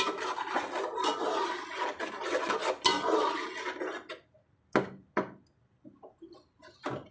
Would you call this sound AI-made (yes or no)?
no